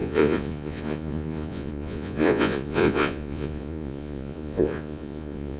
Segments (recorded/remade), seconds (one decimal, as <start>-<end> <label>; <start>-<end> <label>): 0.0-5.6 remade